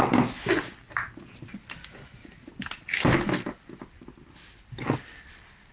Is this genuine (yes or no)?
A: yes